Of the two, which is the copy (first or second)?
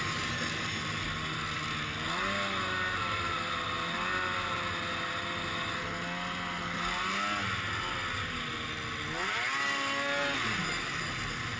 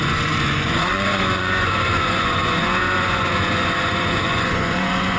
second